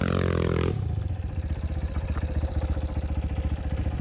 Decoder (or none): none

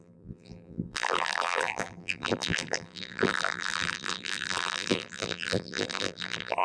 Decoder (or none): vocoder, BigVGAN v2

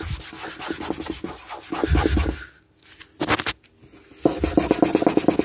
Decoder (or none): none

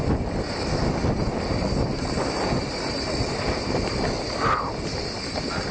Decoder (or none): none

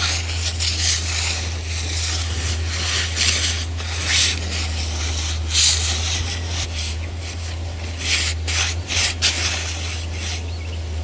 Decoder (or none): none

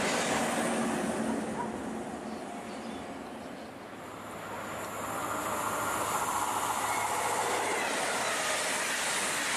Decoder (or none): none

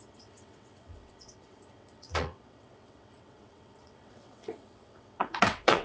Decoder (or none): vocoder, WaveNeXt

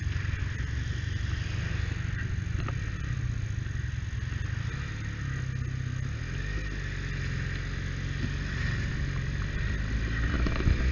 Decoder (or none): none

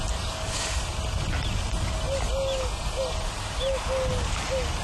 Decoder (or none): none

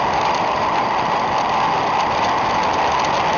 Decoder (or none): none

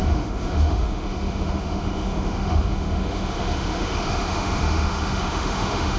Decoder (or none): autoencoder, DAC-VAE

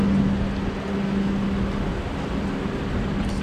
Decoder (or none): none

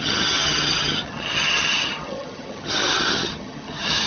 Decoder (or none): vocoder, HiFi-GAN